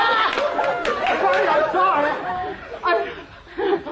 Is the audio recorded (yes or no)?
yes